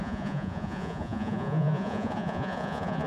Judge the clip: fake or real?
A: fake